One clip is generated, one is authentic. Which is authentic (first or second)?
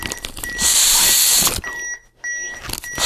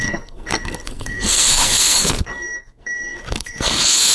first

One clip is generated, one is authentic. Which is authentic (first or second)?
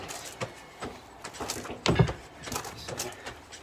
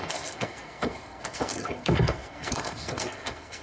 first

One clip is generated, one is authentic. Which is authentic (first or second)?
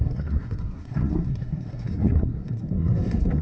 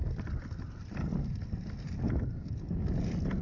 second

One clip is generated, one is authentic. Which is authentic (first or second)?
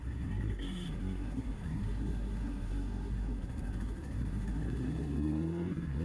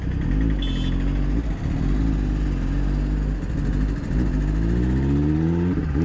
second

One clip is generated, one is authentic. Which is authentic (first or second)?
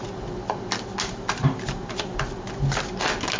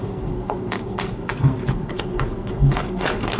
first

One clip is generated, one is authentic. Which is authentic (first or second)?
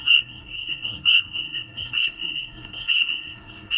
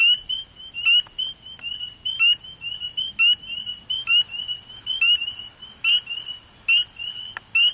second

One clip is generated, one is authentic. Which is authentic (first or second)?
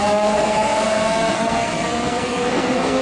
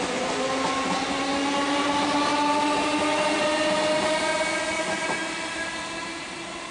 second